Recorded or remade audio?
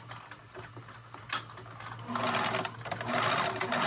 recorded